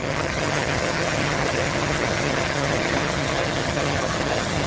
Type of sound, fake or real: fake